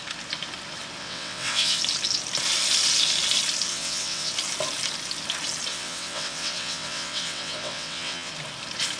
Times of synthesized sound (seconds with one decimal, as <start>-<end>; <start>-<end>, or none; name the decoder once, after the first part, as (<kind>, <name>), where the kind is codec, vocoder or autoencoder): 1.0-1.8 (vocoder, WaveNeXt); 3.7-4.3; 5.7-8.3